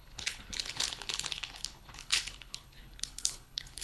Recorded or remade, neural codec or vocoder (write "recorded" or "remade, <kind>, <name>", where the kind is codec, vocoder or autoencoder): remade, codec, HILCodec